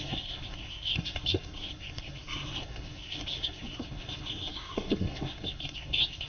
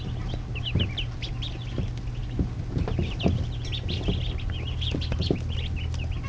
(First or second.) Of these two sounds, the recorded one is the second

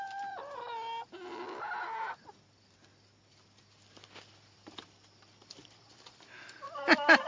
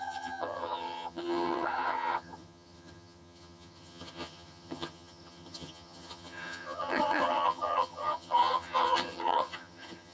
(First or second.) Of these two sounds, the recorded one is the first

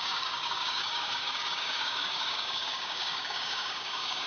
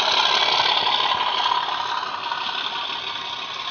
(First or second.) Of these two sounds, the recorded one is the second